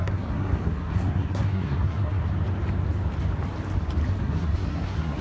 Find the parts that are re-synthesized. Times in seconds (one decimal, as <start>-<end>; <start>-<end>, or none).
0.0-2.2; 4.2-5.2